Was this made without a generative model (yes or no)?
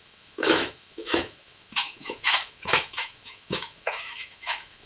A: no